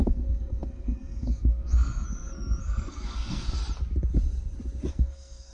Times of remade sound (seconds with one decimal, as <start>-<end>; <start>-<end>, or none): 0.0-3.6; 4.9-5.5